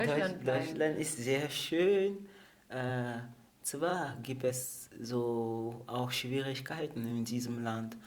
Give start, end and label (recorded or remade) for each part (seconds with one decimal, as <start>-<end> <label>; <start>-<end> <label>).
0.0-3.9 recorded; 3.9-4.5 remade; 4.5-7.1 recorded; 7.1-8.1 remade